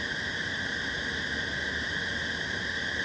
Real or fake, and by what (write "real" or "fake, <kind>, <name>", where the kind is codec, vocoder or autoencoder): real